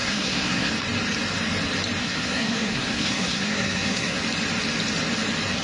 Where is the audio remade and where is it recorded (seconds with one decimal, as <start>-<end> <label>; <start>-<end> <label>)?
0.0-0.7 remade; 0.7-2.0 recorded; 2.0-4.2 remade; 4.2-5.6 recorded